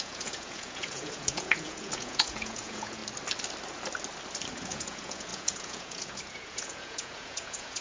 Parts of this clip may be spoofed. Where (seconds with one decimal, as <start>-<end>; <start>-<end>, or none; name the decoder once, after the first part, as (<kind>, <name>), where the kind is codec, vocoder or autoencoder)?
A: 0.0-3.0 (vocoder, Vocos); 4.6-7.8